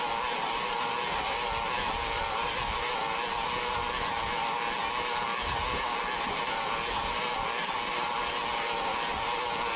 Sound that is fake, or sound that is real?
real